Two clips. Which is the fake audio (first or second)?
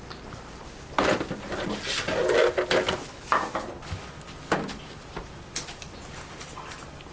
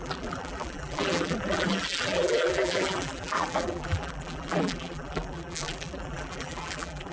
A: second